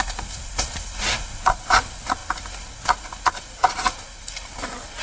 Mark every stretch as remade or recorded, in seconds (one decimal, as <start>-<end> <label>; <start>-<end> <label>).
0.0-2.2 remade; 2.2-3.7 recorded; 3.7-5.0 remade